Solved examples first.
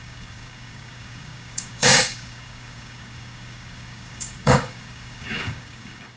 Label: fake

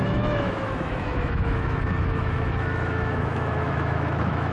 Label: fake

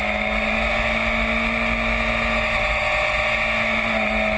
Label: real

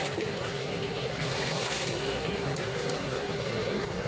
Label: fake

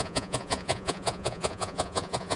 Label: fake